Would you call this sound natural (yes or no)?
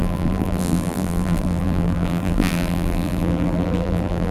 no